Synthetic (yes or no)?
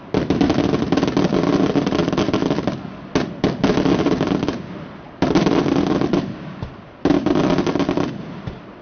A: no